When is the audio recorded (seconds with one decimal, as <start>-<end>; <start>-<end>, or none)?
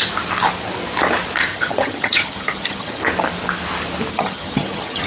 0.0-1.5; 3.0-4.1